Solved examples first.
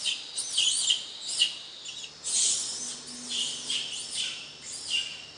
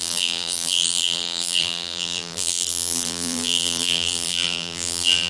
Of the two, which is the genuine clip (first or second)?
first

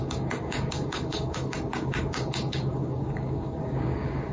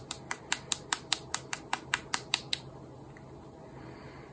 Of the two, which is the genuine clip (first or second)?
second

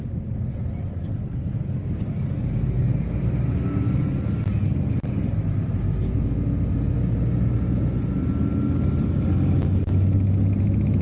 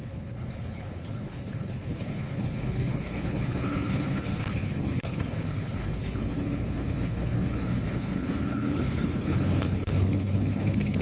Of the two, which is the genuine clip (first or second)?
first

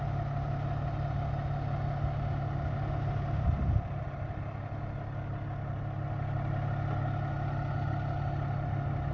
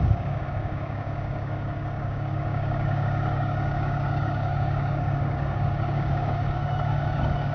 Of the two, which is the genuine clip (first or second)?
first